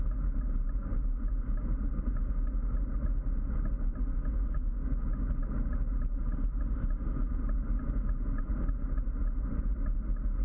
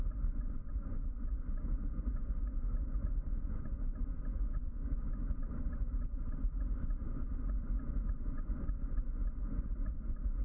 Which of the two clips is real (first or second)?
first